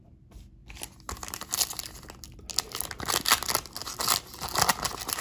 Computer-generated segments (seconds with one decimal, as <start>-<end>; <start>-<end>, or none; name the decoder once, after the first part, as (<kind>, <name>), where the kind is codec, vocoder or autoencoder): none